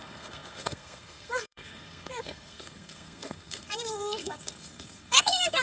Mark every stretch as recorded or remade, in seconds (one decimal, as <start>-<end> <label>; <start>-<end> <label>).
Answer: 0.0-5.6 remade